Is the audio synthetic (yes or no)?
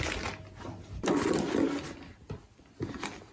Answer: no